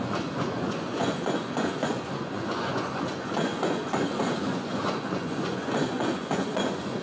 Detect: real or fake fake